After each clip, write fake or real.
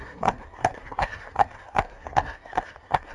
fake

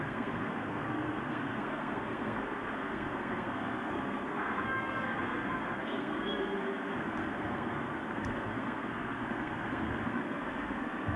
fake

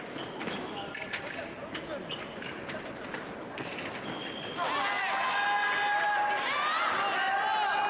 real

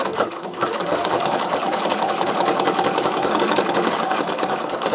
fake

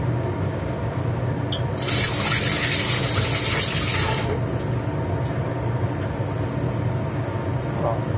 real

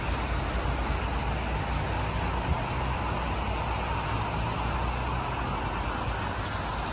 real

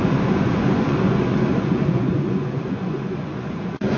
fake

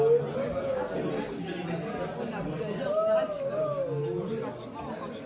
real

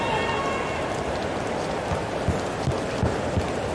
real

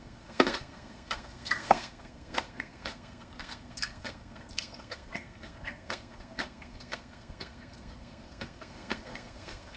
fake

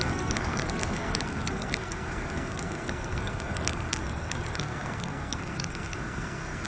fake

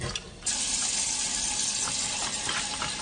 real